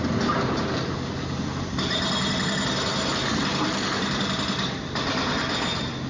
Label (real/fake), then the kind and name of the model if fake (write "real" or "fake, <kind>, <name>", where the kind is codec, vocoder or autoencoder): real